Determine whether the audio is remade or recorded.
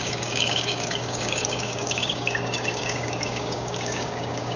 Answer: remade